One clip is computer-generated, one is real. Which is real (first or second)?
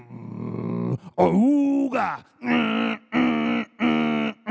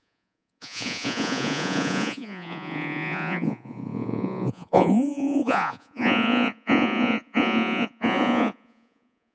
first